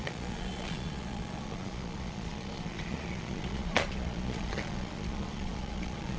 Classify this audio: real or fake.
fake